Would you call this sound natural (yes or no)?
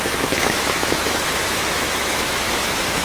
no